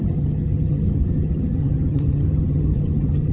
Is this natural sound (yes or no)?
no